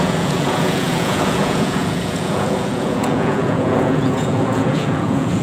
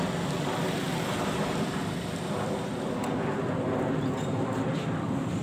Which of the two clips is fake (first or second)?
first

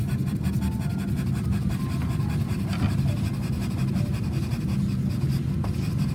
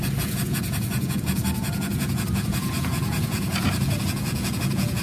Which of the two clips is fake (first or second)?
second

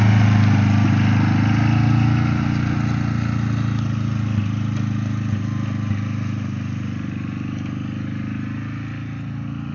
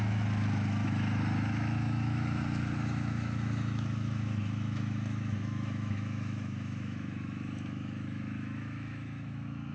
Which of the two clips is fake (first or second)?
second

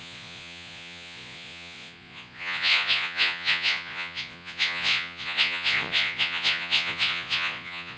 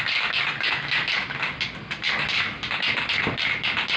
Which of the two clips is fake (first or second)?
first